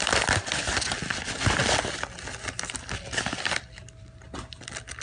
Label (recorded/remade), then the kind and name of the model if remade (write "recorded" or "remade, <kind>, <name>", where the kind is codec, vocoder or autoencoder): recorded